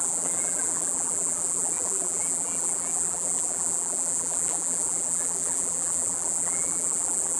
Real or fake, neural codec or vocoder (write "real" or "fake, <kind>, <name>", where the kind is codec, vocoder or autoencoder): fake, vocoder, BigVGAN v2